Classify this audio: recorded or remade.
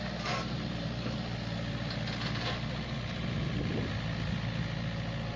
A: recorded